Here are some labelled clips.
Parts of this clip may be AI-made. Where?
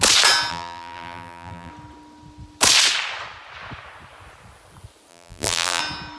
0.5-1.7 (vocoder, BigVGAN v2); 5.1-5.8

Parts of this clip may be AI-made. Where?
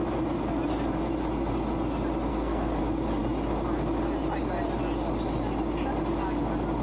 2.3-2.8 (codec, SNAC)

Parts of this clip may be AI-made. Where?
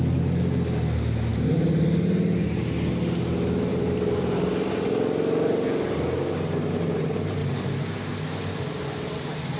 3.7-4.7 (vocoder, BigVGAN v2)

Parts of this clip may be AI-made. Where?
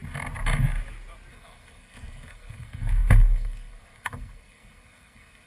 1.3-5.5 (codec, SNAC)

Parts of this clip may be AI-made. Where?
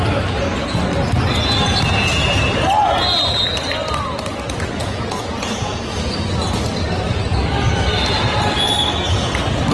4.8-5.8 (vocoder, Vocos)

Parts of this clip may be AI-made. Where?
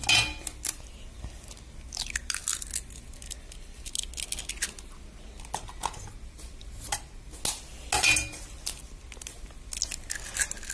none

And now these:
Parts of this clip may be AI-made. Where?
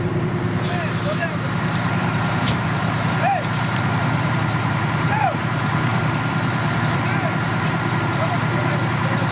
0.0-9.3 (vocoder, BigVGAN v2)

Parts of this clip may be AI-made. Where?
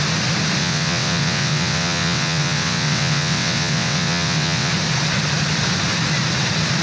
0.6-4.7 (vocoder, WaveNeXt)